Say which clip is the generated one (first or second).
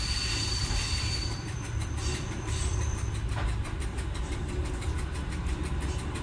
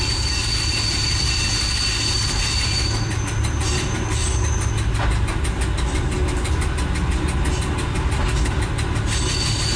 first